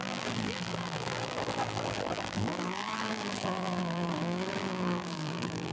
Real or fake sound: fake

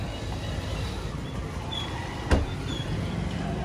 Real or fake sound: real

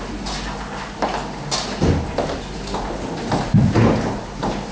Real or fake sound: real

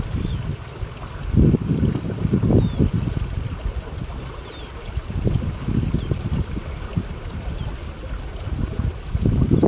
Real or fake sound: real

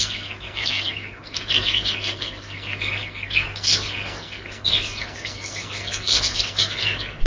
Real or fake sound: fake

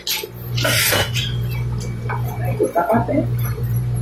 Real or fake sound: real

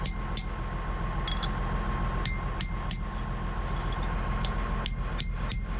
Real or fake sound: real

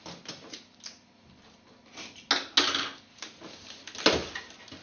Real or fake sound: real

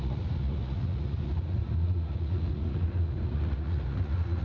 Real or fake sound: fake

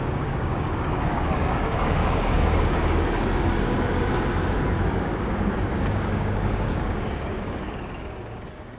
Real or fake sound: fake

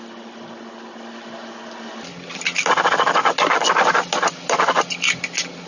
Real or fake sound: real